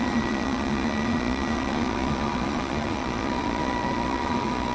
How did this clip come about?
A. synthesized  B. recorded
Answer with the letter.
A